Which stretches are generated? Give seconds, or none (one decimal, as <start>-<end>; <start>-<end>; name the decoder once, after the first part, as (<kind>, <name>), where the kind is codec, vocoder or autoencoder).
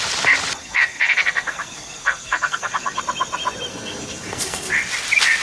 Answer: 0.6-3.0 (codec, SNAC); 3.7-4.7